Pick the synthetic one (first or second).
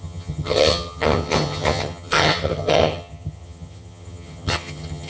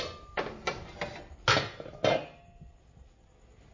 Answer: first